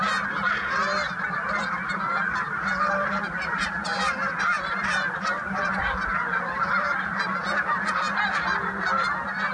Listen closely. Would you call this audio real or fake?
real